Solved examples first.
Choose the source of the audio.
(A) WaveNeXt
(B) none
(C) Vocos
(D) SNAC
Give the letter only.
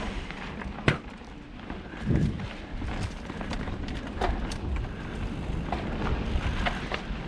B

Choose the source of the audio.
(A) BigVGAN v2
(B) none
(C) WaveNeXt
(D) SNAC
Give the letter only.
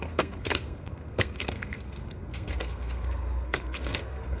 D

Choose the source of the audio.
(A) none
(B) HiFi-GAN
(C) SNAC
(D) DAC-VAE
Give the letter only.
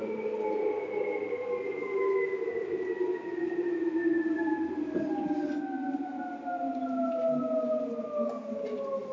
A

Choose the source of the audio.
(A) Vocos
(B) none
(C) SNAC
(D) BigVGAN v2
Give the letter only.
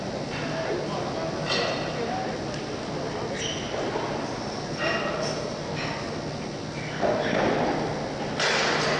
B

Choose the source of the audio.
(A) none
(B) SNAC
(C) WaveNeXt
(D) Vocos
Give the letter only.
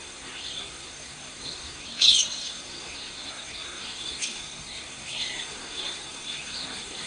B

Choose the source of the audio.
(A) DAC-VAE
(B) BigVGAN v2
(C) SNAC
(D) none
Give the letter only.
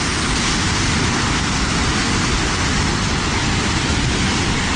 D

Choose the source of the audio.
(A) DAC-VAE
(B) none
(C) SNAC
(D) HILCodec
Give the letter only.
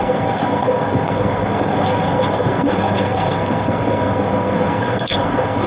C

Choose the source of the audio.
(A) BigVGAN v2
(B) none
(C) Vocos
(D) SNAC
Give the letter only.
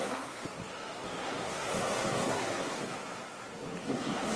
D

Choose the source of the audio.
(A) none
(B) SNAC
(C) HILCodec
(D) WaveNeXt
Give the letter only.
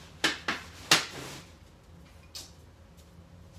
A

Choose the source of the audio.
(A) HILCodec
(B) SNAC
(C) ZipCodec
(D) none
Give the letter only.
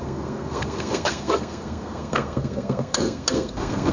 B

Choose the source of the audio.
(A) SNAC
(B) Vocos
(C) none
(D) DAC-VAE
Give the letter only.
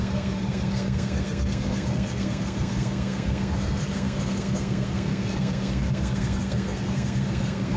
A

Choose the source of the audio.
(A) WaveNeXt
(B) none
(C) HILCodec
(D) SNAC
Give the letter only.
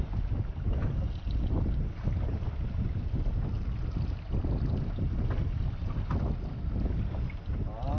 B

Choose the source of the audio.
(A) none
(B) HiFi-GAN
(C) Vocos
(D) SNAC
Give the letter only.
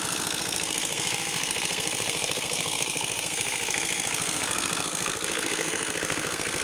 D